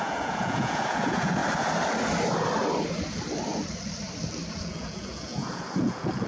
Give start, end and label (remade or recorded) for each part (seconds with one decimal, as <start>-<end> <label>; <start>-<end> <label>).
0.0-1.4 remade; 1.4-4.6 recorded; 4.6-6.3 remade